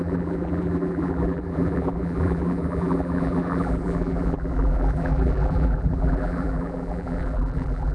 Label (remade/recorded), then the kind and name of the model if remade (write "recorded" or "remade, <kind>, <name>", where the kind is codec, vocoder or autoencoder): remade, vocoder, BigVGAN v2